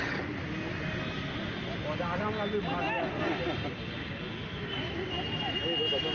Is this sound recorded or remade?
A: recorded